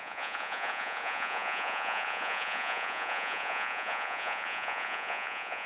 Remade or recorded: remade